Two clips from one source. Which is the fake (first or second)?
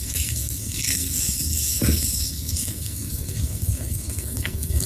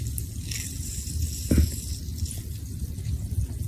first